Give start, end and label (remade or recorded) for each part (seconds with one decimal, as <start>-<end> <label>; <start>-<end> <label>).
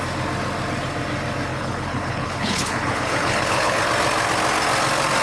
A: 0.0-1.5 recorded; 1.5-3.8 remade; 3.8-5.2 recorded